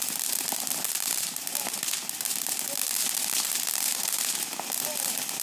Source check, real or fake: real